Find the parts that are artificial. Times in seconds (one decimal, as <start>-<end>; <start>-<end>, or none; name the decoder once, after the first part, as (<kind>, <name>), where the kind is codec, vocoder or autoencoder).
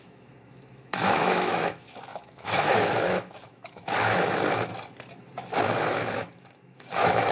0.0-4.7 (autoencoder, DAC-VAE); 5.6-7.3